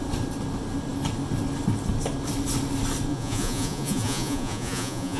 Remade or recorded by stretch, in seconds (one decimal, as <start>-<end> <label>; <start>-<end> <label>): 0.0-3.1 recorded; 3.1-5.2 remade